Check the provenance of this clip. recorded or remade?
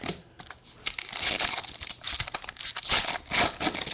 recorded